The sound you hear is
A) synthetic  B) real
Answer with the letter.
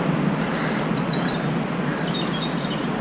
B